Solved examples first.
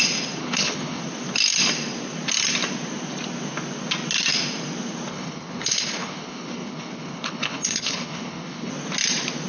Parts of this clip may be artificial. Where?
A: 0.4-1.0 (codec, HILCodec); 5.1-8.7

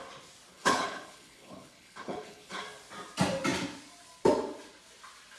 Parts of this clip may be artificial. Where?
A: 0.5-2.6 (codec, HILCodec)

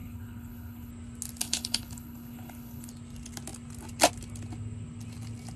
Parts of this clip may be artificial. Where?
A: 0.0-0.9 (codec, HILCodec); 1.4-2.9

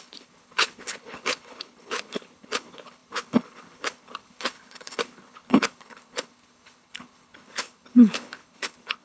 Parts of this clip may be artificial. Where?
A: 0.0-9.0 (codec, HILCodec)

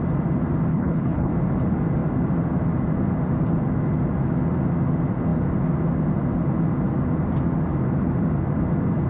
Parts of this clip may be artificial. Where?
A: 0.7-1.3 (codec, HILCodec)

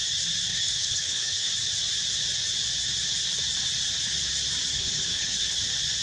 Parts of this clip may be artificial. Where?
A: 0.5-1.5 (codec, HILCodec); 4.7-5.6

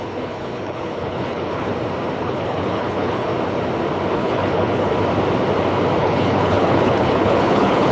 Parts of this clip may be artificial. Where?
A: 0.0-1.7 (codec, HILCodec); 2.2-3.3; 4.1-4.9; 6.0-7.9

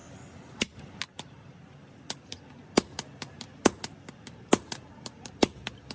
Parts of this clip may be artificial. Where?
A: none